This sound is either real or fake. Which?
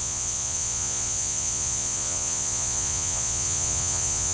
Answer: fake